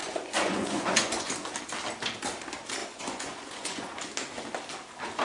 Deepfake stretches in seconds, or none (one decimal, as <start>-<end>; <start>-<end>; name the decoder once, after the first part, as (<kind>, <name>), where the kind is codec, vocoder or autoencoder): 0.0-1.3 (vocoder, Vocos); 2.8-4.0